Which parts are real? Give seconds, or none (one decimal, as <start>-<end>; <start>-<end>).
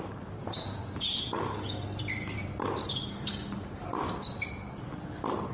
0.0-0.4; 1.3-5.5